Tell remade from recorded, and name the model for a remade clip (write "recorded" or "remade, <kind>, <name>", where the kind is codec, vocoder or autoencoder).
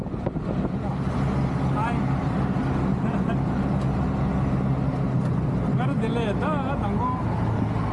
recorded